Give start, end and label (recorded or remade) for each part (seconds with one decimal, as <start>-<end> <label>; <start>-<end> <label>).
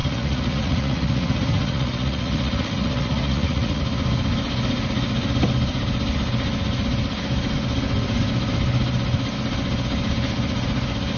0.0-3.8 remade; 3.8-11.2 recorded